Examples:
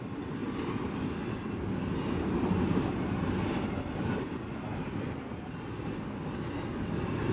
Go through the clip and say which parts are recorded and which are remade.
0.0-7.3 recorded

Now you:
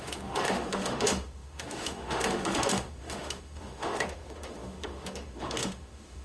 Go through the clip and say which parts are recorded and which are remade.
0.0-6.2 remade